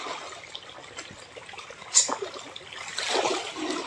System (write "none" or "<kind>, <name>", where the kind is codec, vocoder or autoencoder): none